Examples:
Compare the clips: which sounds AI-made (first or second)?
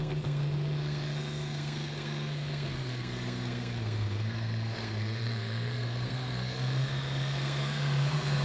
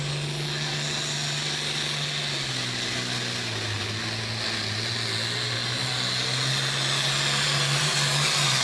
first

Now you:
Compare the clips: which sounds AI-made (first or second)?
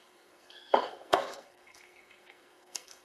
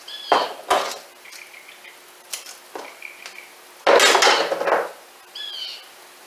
first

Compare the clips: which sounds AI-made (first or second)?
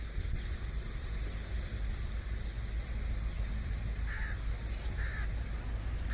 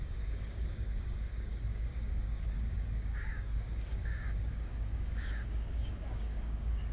second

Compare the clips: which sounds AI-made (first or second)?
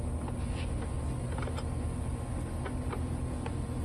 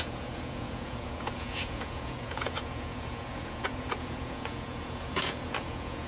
second